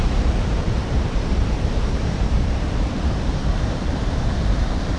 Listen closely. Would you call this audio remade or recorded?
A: remade